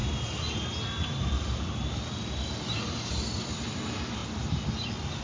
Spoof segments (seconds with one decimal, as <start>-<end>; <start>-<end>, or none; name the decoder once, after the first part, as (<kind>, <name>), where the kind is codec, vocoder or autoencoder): none